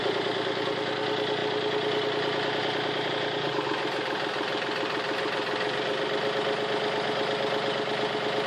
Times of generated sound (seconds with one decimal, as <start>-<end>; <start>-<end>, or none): none